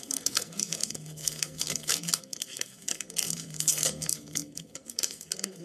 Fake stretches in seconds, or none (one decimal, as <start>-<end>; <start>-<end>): 0.0-5.6